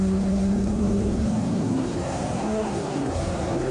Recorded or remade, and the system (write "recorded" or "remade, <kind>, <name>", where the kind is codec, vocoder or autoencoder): remade, codec, SNAC